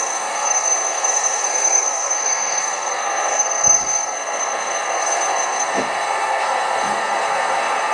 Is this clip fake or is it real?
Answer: fake